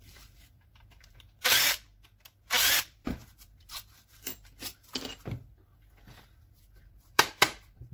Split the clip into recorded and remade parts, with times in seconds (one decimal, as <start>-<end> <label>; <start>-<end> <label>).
0.0-1.8 remade; 1.8-2.8 recorded; 2.8-4.3 remade; 4.3-6.8 recorded; 6.8-7.9 remade